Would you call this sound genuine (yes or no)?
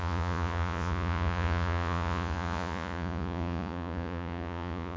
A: no